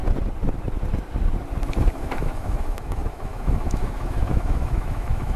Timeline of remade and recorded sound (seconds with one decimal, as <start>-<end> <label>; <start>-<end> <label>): 0.0-1.9 recorded; 1.9-5.4 remade